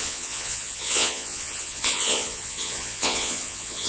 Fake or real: fake